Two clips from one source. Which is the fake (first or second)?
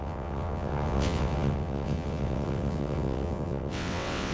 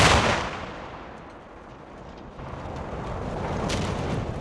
first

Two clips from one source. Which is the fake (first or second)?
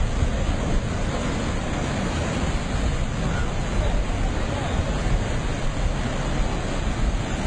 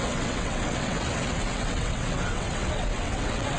second